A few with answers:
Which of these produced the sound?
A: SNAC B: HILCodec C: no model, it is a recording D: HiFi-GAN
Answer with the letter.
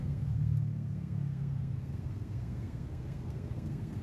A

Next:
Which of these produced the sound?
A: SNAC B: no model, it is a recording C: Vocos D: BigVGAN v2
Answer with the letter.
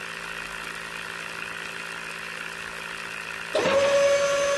B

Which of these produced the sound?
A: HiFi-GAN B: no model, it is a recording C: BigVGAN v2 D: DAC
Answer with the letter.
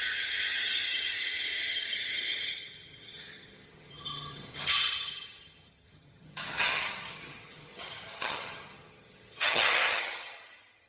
A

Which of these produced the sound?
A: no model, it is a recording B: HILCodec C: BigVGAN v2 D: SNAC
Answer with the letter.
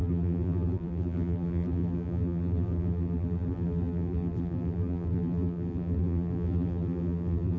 C